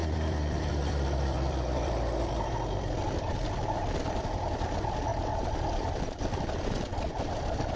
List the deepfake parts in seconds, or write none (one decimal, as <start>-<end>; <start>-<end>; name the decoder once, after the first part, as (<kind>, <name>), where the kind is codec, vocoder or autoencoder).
0.0-3.5 (vocoder, BigVGAN v2); 5.1-6.2; 6.9-7.8